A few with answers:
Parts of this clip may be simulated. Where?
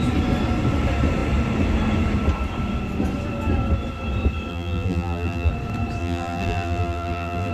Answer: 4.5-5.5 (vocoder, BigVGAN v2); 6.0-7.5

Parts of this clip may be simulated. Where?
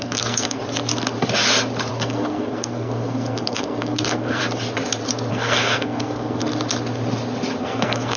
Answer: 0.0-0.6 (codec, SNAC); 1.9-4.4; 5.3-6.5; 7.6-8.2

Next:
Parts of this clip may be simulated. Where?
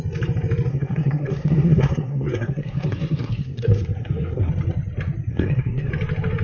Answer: 0.7-4.5 (codec, SNAC); 5.3-5.9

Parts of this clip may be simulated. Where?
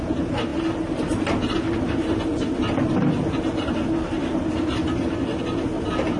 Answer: none